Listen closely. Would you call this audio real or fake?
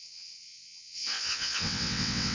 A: fake